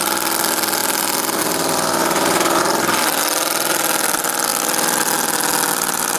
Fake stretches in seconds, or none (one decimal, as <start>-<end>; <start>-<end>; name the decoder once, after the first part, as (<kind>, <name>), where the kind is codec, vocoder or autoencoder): 4.5-5.1 (vocoder, BigVGAN v2)